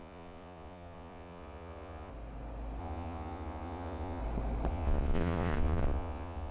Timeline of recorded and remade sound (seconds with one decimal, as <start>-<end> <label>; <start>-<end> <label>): 0.0-2.1 remade; 2.1-2.8 recorded; 2.8-4.2 remade; 4.2-4.7 recorded; 4.7-6.5 remade